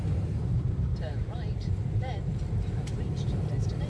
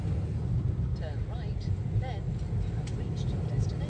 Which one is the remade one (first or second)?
first